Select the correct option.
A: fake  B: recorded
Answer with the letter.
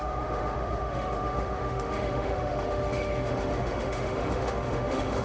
A